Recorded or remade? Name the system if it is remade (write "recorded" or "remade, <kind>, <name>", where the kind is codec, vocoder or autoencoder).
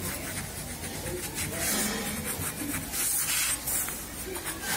recorded